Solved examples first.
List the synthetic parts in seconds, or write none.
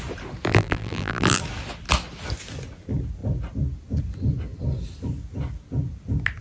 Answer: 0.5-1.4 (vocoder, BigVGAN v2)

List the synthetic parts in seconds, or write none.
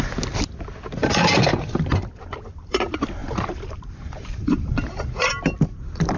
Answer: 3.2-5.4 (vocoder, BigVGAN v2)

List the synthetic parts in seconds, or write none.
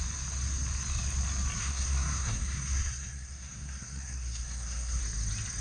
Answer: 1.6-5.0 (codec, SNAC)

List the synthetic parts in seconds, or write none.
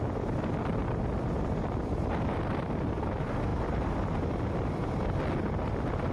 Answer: none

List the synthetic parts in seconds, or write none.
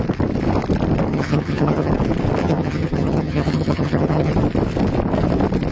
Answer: 1.1-1.9 (vocoder, HiFi-GAN); 2.4-4.3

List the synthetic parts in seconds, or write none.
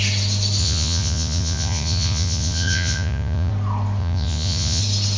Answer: 0.6-3.5 (vocoder, Vocos); 4.0-4.8